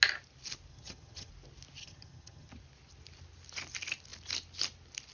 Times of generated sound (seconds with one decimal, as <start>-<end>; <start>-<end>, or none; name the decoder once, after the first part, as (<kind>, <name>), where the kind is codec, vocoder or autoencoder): 0.7-1.3 (vocoder, HiFi-GAN); 1.8-2.5